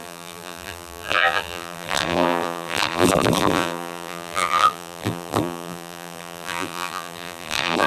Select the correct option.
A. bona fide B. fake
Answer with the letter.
B